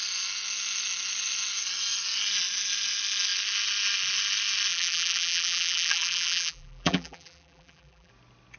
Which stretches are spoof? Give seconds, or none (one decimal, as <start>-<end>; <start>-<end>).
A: 4.7-8.1